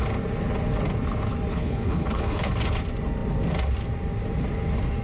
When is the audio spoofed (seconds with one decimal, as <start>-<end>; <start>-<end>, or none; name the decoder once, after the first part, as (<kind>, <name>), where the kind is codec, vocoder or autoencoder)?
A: 1.5-2.5 (codec, HILCodec)